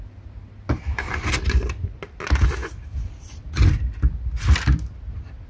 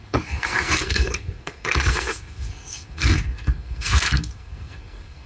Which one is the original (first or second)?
first